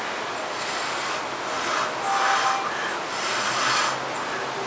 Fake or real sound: real